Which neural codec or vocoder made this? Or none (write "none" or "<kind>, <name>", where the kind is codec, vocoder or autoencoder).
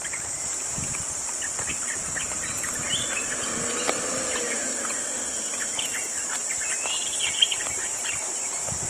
vocoder, BigVGAN v2